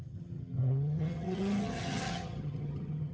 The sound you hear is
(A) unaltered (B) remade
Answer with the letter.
B